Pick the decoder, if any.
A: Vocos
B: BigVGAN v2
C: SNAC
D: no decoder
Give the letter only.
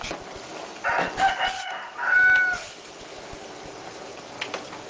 D